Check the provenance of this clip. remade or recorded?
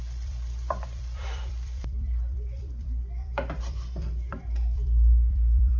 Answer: remade